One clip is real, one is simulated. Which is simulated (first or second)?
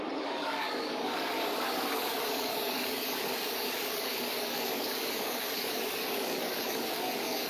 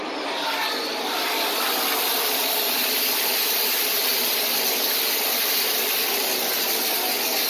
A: first